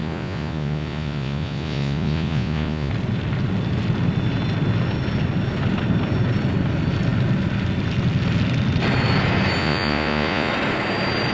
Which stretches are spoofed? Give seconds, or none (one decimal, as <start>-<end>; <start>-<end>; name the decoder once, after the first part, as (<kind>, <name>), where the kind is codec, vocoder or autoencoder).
0.0-2.9 (vocoder, Vocos); 9.6-10.5

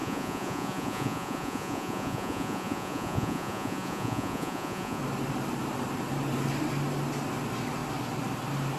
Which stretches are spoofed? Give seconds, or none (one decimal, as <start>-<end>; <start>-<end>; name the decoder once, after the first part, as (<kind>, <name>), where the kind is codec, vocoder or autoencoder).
0.0-5.0 (vocoder, Vocos)

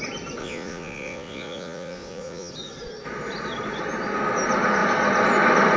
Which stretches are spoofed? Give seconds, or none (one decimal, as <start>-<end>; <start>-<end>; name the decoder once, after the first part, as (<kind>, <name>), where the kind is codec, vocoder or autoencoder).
0.4-2.5 (vocoder, Vocos)

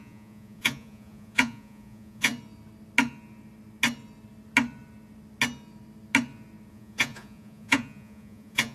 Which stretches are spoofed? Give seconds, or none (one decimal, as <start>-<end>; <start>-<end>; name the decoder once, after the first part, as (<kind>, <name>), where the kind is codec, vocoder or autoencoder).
0.0-2.3 (vocoder, Vocos); 6.7-8.7

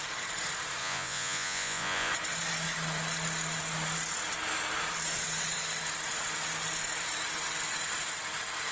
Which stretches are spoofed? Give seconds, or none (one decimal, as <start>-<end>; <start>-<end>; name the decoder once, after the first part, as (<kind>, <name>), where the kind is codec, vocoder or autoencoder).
0.8-2.1 (vocoder, Vocos)

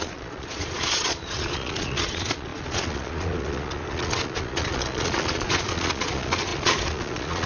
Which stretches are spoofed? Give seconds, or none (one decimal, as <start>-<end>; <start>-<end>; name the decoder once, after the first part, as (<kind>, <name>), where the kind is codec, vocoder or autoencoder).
0.0-7.5 (vocoder, Vocos)

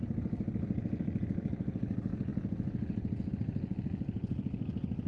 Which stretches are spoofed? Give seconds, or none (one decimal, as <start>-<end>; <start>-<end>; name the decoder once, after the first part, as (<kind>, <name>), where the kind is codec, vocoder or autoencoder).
none

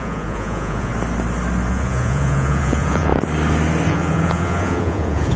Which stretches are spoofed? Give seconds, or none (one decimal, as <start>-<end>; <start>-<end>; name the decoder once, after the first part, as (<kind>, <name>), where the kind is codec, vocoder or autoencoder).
0.0-0.9 (vocoder, Vocos); 1.7-3.1; 3.9-5.4